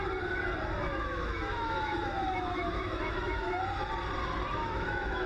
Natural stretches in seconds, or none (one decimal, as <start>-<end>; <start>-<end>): 0.0-0.9; 3.6-4.6